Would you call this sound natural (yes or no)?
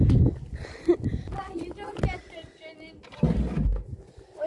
yes